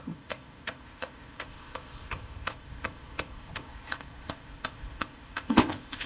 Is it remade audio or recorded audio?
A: remade